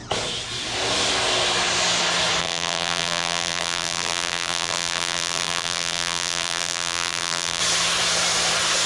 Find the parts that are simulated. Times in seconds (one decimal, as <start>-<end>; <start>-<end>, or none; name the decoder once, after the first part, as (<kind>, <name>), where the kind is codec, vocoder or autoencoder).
2.4-7.6 (vocoder, BigVGAN v2)